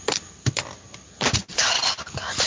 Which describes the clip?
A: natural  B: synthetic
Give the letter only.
A